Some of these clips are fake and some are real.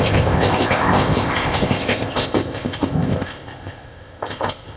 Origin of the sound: fake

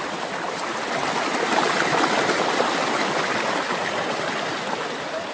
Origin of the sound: real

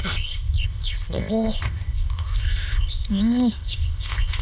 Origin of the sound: fake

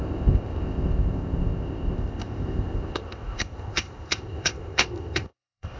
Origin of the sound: fake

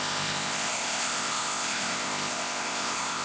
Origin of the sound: fake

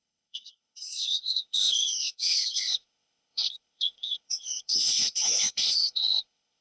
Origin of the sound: fake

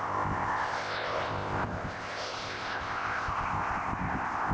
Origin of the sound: fake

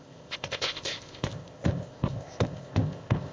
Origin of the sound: fake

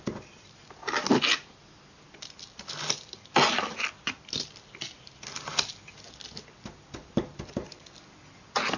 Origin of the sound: real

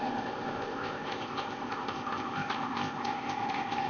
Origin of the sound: fake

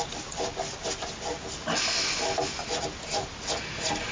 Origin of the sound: real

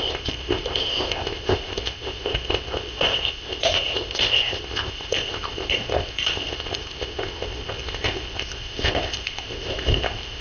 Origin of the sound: fake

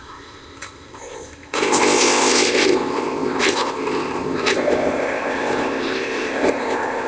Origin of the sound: fake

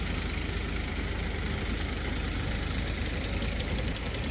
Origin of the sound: real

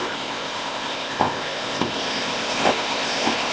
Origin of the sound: fake